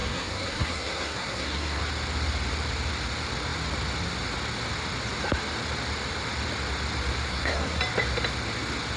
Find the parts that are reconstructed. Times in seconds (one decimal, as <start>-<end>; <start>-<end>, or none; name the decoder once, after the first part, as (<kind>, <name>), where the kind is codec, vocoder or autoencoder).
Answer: 0.0-1.8 (codec, SNAC); 7.3-7.8